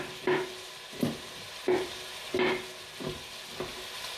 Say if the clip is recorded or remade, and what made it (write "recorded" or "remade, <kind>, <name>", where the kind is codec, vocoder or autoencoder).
recorded